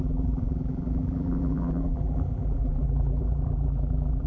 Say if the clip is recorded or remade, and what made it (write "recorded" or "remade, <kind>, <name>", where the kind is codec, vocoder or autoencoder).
remade, vocoder, BigVGAN v2